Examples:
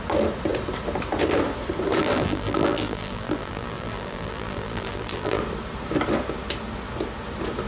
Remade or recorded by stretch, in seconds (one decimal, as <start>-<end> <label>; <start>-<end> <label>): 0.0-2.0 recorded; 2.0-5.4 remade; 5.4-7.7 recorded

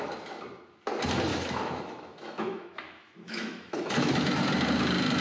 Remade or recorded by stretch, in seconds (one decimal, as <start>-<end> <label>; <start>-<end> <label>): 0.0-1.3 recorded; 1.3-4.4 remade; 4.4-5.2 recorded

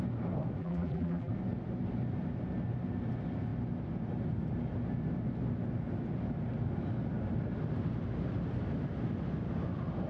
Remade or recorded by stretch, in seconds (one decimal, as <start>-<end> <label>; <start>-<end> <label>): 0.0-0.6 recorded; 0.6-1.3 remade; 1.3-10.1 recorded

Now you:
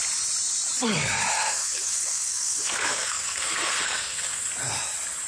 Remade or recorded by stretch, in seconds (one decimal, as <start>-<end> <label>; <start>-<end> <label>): 0.0-1.3 recorded; 1.3-4.5 remade; 4.5-5.3 recorded

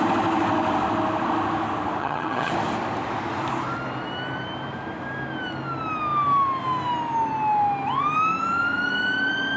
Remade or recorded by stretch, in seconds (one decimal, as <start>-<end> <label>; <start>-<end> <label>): 0.0-2.0 recorded; 2.0-2.5 remade; 2.5-9.6 recorded

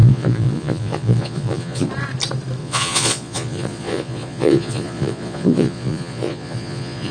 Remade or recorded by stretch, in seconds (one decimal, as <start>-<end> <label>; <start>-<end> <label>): 0.0-1.9 remade; 1.9-2.6 recorded; 2.6-7.1 remade

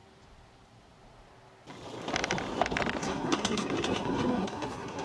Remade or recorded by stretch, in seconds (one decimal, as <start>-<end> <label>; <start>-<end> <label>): 0.0-3.0 recorded; 3.0-5.0 remade